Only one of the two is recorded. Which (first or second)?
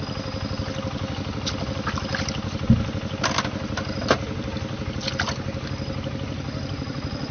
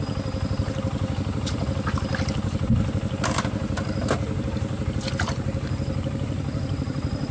first